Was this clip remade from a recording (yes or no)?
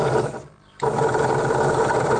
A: yes